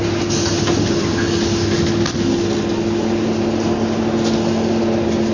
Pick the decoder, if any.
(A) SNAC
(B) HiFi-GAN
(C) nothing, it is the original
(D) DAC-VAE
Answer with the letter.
C